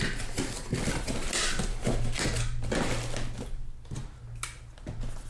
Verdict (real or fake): real